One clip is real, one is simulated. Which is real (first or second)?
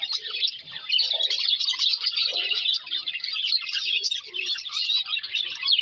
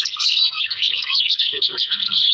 first